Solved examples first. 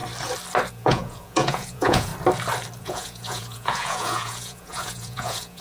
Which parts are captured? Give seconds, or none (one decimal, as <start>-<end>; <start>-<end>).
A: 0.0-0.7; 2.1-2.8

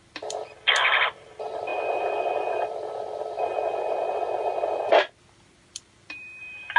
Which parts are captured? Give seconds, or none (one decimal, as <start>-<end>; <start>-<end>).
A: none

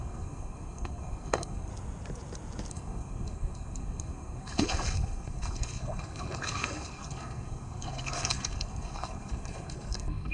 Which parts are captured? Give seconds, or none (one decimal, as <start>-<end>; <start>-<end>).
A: 1.7-2.7

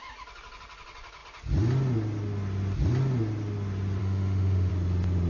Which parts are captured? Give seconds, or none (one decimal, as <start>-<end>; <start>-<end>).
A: 0.0-4.0; 4.7-5.3

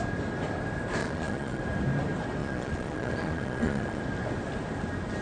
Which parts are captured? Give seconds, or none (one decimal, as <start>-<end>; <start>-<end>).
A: 0.0-1.0; 1.6-2.4; 4.0-5.2